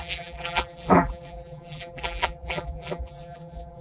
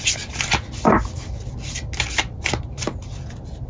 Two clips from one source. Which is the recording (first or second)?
second